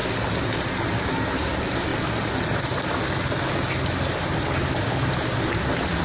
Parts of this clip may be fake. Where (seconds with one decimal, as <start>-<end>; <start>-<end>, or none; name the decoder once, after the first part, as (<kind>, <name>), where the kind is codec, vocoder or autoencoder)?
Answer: none